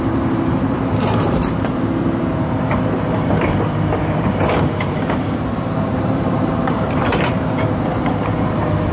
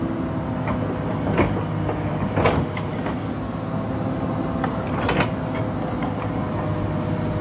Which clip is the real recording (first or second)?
second